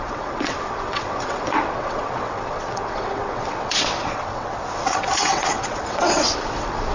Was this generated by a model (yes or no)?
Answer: yes